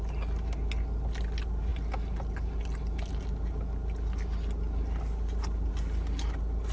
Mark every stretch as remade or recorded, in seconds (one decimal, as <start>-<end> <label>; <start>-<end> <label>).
0.0-6.7 recorded